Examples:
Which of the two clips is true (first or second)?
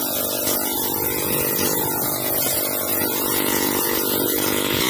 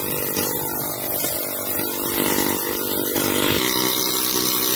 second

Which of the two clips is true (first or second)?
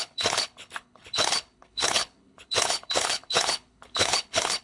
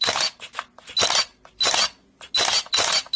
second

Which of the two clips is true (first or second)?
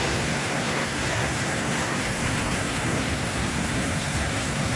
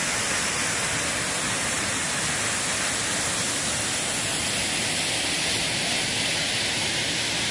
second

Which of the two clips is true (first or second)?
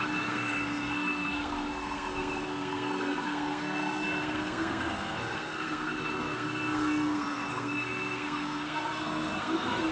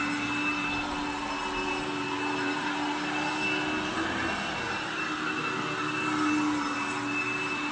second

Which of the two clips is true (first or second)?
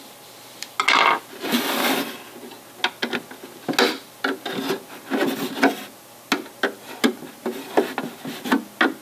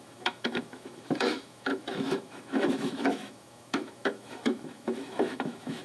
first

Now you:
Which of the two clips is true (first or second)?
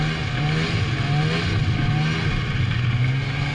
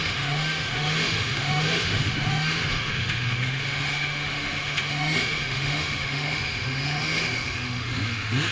first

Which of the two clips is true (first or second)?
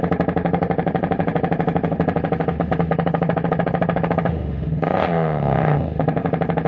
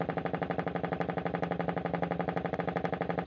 second